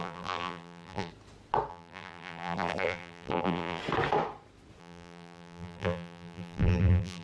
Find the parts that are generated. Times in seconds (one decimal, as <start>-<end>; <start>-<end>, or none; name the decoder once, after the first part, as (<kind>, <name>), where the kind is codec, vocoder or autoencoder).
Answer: 0.0-1.1 (vocoder, BigVGAN v2); 1.7-3.8; 4.8-7.2